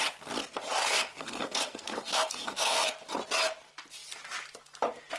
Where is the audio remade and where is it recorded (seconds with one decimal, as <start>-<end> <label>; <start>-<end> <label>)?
0.0-0.8 recorded; 0.8-2.9 remade; 2.9-5.2 recorded